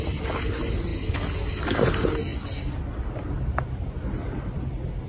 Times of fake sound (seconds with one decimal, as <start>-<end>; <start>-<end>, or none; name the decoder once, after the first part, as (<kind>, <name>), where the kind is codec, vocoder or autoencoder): none